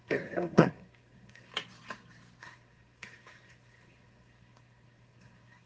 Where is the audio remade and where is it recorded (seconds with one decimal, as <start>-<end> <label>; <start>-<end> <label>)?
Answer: 0.0-1.5 remade; 1.5-2.4 recorded; 2.4-5.7 remade